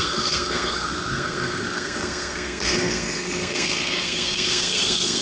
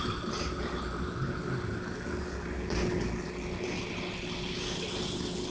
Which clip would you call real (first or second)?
second